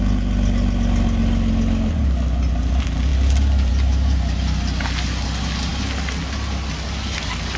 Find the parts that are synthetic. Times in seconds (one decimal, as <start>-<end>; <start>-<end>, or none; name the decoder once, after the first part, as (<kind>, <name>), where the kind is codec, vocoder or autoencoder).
none